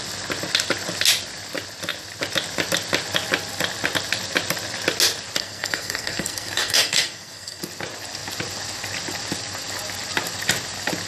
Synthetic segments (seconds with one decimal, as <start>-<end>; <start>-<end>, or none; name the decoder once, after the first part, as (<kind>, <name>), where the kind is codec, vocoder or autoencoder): 5.4-7.6 (codec, SNAC)